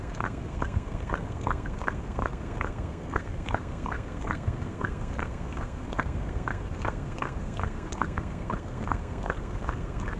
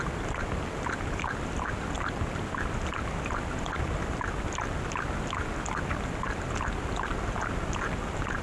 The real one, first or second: second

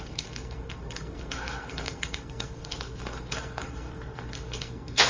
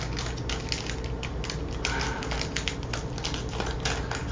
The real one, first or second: second